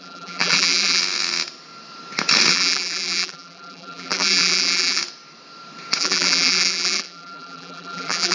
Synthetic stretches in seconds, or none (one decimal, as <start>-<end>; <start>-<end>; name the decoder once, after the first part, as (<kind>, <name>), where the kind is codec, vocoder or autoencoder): 0.0-1.0 (vocoder, BigVGAN v2); 2.5-5.0; 6.0-8.3

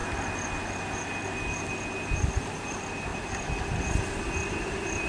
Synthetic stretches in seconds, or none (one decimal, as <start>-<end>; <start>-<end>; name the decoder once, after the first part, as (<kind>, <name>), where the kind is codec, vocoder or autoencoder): 2.4-3.1 (vocoder, BigVGAN v2); 4.1-5.1

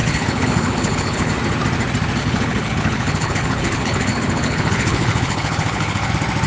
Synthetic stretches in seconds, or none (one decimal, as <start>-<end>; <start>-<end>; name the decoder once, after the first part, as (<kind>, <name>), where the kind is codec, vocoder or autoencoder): 0.0-1.3 (codec, HILCodec); 2.2-6.1

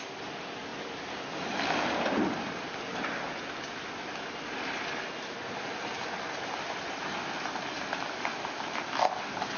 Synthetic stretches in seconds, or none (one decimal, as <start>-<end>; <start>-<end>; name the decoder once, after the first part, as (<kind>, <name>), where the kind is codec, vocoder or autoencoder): none

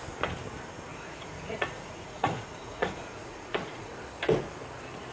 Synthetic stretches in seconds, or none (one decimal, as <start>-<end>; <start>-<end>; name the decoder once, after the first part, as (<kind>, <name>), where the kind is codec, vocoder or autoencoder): 0.9-3.9 (vocoder, Vocos)

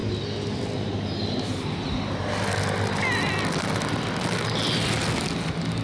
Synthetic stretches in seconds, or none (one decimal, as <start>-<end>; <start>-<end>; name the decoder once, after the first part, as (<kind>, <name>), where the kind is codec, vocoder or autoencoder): none

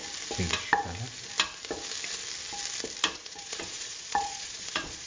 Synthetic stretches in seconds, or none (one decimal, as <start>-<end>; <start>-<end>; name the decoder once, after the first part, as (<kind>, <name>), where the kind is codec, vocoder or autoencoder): 3.1-5.1 (vocoder, Vocos)

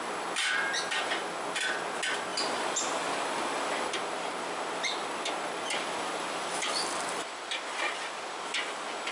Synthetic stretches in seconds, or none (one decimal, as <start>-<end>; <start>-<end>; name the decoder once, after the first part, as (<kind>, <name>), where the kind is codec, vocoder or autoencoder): 2.3-7.0 (vocoder, BigVGAN v2)